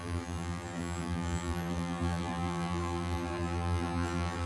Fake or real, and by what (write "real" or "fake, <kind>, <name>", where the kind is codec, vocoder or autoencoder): fake, vocoder, BigVGAN v2